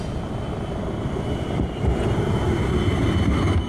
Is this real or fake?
real